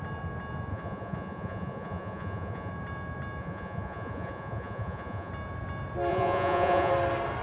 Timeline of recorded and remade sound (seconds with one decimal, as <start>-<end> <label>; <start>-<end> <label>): 0.0-0.7 recorded; 0.7-2.7 remade; 2.7-3.4 recorded; 3.4-5.3 remade; 5.3-6.1 recorded; 6.1-6.9 remade; 6.9-7.4 recorded